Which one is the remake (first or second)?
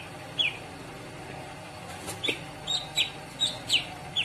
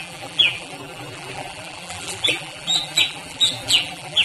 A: second